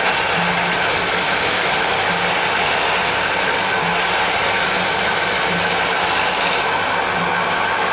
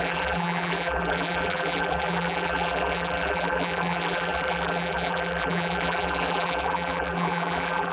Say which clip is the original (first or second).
first